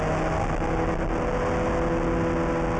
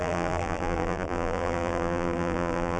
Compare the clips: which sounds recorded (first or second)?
first